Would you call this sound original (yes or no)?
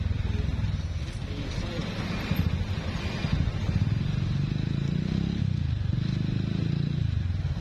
yes